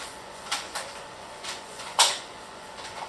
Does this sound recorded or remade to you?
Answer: remade